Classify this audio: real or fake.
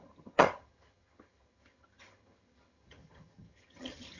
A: fake